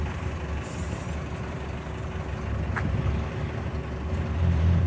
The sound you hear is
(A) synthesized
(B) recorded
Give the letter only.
B